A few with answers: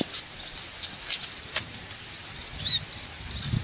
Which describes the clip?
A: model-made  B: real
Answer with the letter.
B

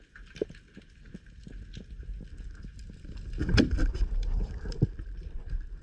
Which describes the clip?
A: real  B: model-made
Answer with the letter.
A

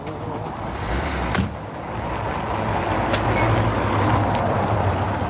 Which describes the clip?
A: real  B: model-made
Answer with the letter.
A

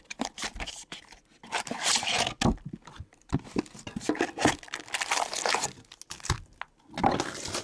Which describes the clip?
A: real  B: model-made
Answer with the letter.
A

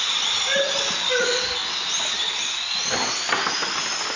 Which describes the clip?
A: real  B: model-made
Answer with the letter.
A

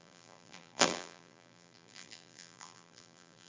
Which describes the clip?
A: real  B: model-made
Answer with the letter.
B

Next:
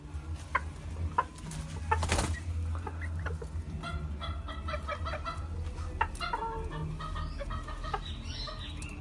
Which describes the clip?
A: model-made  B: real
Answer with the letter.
B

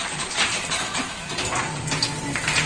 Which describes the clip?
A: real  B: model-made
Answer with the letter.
A